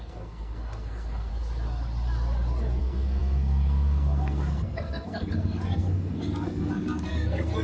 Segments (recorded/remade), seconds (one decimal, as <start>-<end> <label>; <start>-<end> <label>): 0.0-1.3 remade; 1.3-2.8 recorded; 2.8-7.6 remade